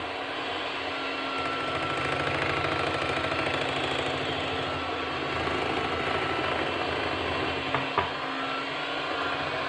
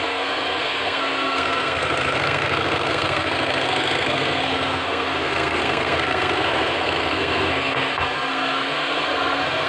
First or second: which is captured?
first